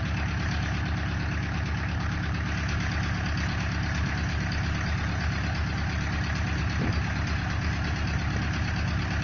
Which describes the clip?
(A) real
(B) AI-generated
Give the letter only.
A